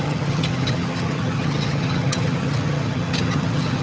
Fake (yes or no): yes